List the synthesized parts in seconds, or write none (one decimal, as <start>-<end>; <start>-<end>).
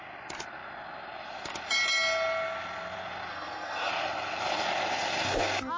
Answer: 3.3-3.9